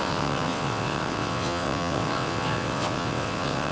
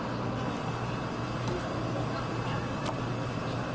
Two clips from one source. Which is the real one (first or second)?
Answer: second